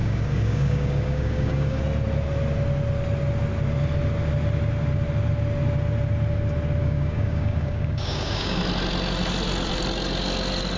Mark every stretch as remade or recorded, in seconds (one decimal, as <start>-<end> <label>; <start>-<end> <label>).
0.0-1.8 remade; 1.8-6.8 recorded; 6.8-8.6 remade; 8.6-10.8 recorded